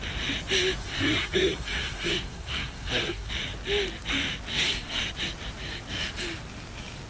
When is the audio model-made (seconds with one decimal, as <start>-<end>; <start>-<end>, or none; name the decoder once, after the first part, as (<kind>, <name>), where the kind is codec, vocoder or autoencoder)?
0.8-3.3 (codec, SNAC); 4.5-5.0